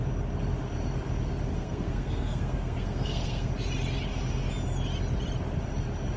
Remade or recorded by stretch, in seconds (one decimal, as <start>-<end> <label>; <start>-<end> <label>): 0.0-1.5 recorded; 1.5-3.5 remade; 3.5-6.2 recorded